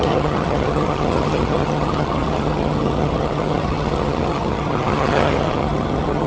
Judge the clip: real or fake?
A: fake